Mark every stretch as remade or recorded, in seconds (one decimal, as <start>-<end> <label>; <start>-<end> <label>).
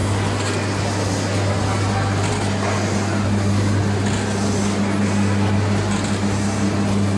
0.0-7.2 recorded